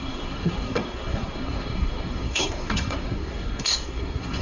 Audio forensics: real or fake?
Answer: fake